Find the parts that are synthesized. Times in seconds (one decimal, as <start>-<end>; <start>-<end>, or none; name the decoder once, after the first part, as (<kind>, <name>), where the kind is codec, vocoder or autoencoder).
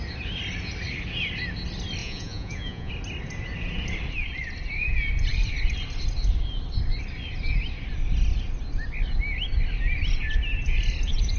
2.0-2.9 (vocoder, Vocos)